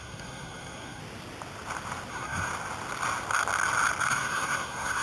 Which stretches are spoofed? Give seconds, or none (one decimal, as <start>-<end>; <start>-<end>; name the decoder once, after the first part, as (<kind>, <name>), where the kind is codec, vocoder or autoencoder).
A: 0.0-1.0 (codec, SNAC); 2.1-2.5; 4.0-5.0